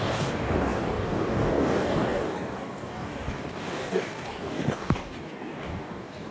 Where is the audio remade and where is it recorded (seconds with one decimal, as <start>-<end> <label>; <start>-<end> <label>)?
0.0-6.3 remade

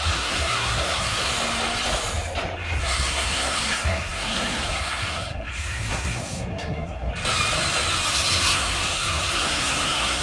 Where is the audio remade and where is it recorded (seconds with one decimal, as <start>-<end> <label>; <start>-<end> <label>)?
0.0-1.3 remade; 1.3-2.8 recorded; 2.8-7.1 remade; 7.1-8.1 recorded; 8.1-10.2 remade

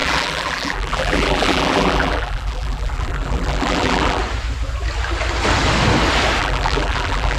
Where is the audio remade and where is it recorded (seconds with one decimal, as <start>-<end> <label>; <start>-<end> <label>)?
0.0-4.2 remade; 4.2-6.4 recorded; 6.4-7.4 remade

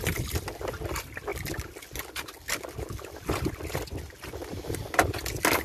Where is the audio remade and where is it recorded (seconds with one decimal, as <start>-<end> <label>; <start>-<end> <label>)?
0.0-5.6 recorded